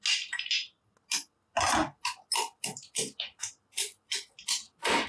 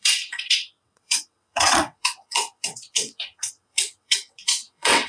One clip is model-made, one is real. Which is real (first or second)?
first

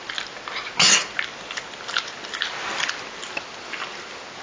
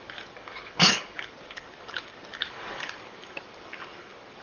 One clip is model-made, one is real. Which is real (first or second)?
first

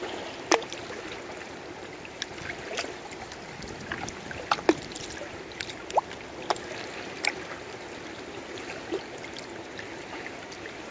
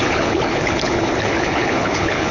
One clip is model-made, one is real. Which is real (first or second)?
first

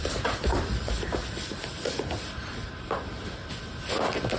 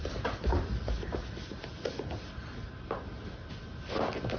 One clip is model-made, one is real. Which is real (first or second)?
second